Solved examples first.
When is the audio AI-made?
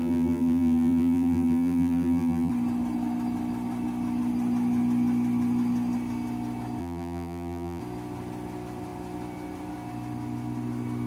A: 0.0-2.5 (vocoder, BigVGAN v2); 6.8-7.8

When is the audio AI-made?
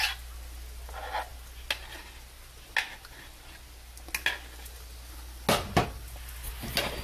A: none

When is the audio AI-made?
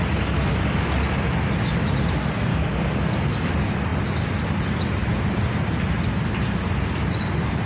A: 2.5-3.5 (codec, DAC)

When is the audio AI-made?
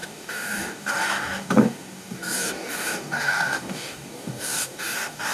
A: 0.0-5.3 (codec, DAC)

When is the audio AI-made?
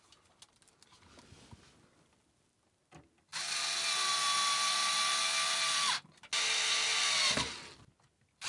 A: none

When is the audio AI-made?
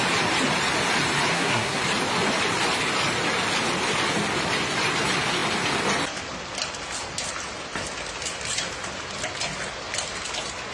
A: 1.3-1.8 (codec, SNAC)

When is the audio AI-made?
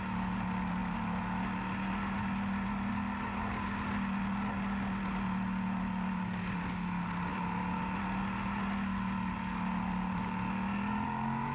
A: none